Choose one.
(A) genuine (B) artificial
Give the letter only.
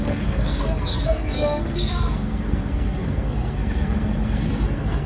B